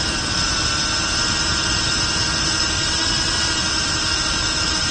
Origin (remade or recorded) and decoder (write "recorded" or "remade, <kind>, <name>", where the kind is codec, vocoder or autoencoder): recorded